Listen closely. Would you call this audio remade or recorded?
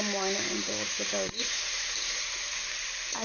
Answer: remade